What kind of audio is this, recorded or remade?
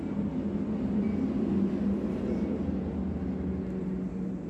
recorded